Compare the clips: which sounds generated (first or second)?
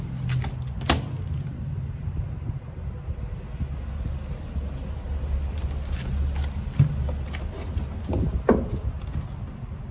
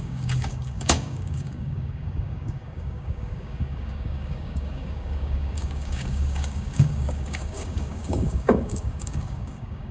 second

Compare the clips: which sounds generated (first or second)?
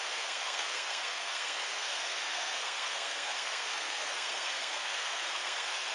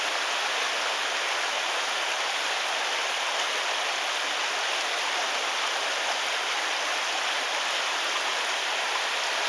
first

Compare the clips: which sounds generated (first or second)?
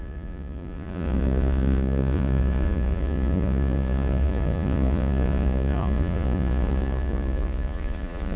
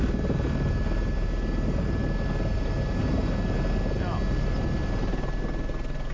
first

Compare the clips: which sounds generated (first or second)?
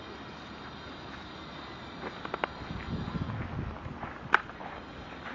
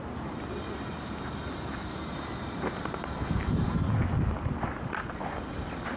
second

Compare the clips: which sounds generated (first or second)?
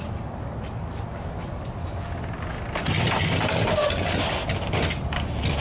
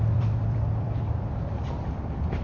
second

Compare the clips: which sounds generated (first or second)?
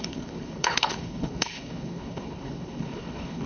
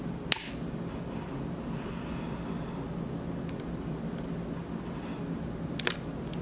first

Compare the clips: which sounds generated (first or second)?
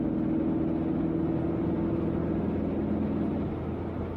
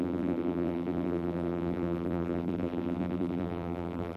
second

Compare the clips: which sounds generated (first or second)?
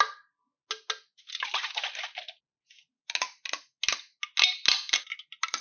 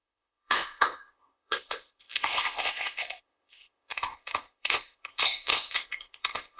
second